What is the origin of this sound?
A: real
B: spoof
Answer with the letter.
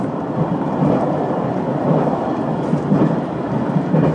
B